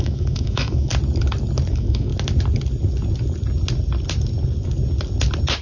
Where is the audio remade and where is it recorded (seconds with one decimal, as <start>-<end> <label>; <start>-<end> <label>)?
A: 0.0-0.9 remade; 0.9-1.7 recorded; 1.7-2.1 remade; 2.1-5.6 recorded

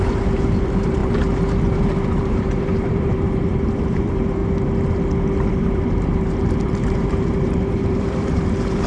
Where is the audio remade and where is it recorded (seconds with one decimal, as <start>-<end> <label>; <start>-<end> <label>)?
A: 0.0-4.4 remade; 4.4-5.5 recorded; 5.5-8.9 remade

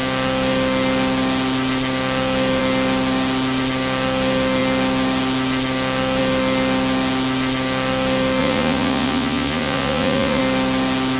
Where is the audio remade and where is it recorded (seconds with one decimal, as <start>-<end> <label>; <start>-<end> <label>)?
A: 0.0-8.4 recorded; 8.4-10.4 remade; 10.4-11.2 recorded

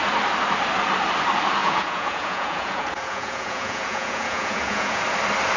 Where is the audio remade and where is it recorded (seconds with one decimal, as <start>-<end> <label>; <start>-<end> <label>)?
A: 0.0-1.6 recorded; 1.6-5.0 remade; 5.0-5.6 recorded

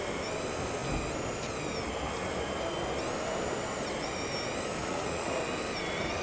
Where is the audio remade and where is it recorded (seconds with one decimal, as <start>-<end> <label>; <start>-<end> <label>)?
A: 0.0-4.8 recorded; 4.8-5.4 remade; 5.4-6.2 recorded

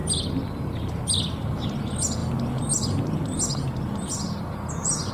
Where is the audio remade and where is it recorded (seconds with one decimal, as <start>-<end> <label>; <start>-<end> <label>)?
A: 0.0-2.2 recorded; 2.2-5.1 remade

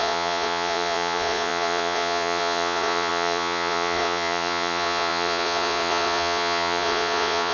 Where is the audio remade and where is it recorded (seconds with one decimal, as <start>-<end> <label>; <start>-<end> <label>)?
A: 0.0-7.5 remade

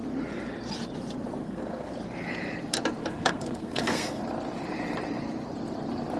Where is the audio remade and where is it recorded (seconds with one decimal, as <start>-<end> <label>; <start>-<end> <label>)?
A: 0.0-1.4 recorded; 1.4-1.9 remade; 1.9-3.0 recorded; 3.0-4.2 remade; 4.2-6.2 recorded